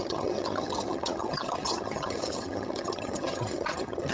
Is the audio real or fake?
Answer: fake